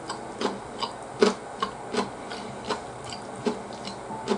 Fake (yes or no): no